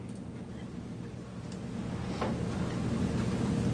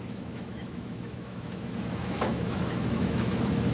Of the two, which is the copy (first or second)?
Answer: second